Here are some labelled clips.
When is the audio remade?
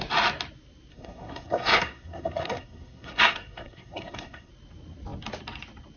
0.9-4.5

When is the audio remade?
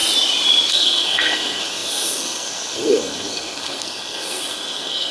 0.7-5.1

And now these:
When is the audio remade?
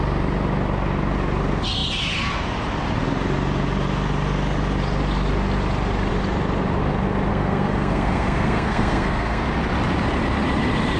7.3-9.4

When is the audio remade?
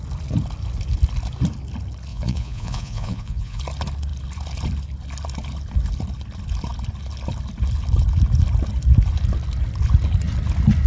2.1-3.6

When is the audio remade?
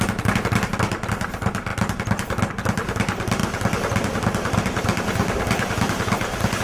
none